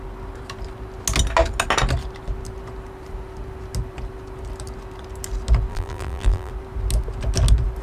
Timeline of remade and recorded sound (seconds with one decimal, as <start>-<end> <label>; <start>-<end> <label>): 0.0-5.7 recorded; 5.7-6.5 remade; 6.5-7.8 recorded